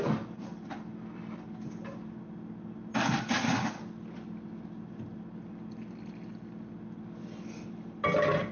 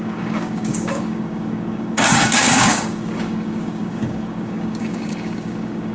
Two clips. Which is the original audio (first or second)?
first